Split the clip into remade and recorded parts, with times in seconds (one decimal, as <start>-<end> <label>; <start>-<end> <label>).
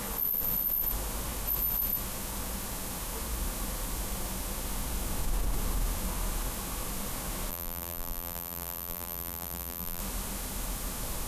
0.0-7.5 recorded; 7.5-10.0 remade; 10.0-11.3 recorded